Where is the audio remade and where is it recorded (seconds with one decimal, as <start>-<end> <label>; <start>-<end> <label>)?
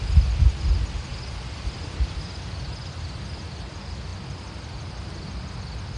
0.0-6.0 recorded